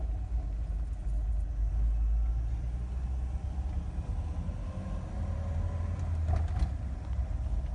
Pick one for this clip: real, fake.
real